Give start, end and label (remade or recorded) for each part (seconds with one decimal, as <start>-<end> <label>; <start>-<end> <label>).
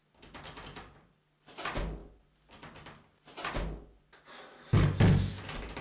0.0-5.8 recorded